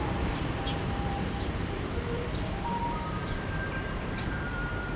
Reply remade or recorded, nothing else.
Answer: remade